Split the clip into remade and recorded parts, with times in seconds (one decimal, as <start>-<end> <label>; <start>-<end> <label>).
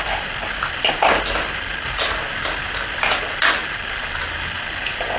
0.0-5.2 recorded